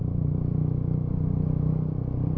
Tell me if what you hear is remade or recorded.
recorded